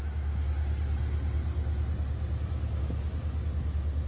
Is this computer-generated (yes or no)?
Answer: no